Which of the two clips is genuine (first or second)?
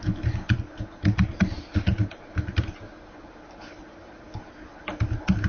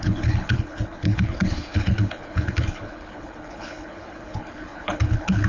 first